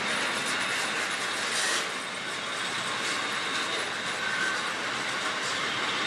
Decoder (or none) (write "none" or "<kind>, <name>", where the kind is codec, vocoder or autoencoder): none